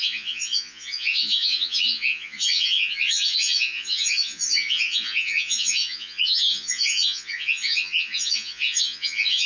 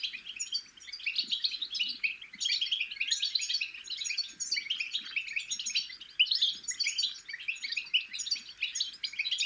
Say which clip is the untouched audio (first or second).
second